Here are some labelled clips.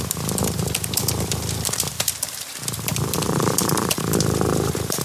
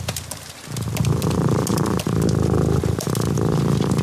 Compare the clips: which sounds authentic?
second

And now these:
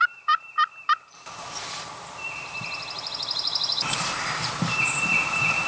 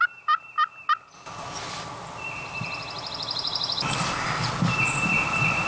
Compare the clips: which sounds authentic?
second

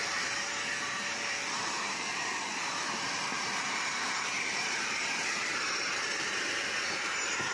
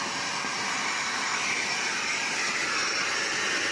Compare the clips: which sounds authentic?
second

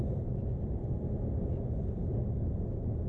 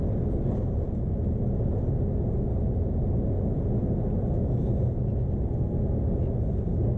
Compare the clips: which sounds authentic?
second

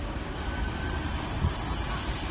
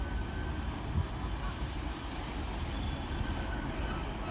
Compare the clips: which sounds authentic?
second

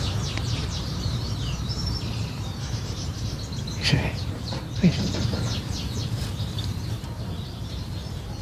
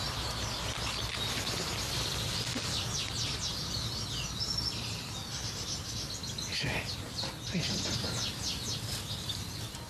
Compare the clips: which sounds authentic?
second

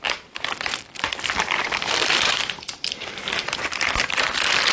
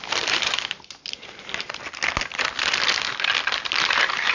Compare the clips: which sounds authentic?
second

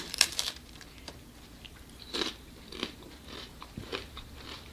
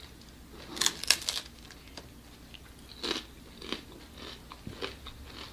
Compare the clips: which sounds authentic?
second